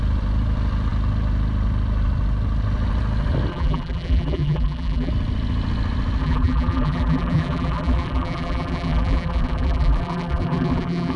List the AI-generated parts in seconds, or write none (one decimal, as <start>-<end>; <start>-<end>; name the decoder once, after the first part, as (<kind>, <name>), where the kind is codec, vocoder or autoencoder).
3.5-5.1 (vocoder, BigVGAN v2); 6.2-11.2